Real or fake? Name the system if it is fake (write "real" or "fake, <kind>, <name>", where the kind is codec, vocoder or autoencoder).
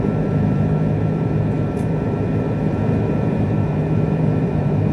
fake, vocoder, BigVGAN v2